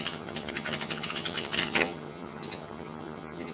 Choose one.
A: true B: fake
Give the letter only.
B